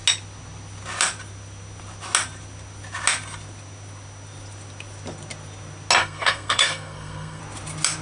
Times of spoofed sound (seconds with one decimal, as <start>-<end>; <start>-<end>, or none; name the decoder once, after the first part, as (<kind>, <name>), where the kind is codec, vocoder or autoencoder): 6.0-7.4 (codec, SNAC)